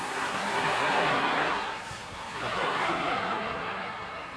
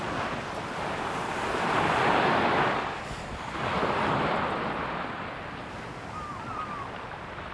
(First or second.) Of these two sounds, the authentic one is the second